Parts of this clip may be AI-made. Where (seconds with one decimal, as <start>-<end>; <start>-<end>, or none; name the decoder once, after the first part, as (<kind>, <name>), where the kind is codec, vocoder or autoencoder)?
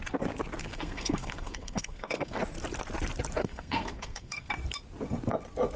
0.6-2.4 (codec, SNAC); 3.4-4.5